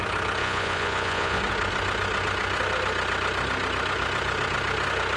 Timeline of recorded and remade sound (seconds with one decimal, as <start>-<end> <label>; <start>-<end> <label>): 0.0-0.4 recorded; 0.4-1.4 remade; 1.4-5.2 recorded